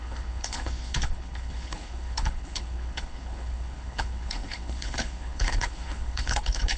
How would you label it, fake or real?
fake